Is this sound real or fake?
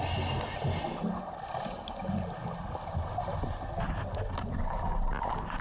real